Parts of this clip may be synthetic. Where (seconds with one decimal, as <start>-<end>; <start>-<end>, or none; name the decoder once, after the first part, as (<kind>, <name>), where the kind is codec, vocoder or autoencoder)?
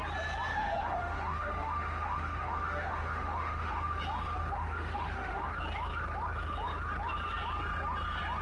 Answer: 0.5-4.0 (autoencoder, DAC-VAE); 4.4-5.5